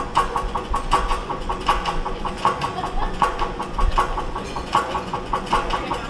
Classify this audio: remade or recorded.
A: remade